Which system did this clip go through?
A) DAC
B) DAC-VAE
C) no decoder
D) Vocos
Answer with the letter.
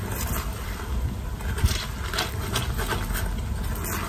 C